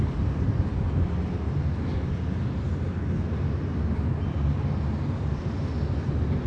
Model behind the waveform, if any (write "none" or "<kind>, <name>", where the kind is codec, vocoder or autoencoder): none